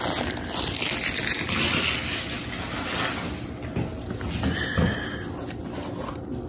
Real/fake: real